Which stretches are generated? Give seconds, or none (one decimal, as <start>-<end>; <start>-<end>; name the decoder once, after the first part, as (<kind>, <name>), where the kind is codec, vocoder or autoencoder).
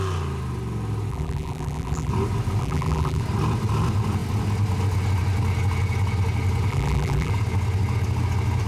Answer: 1.1-2.1 (vocoder, BigVGAN v2); 2.6-3.2; 6.7-7.3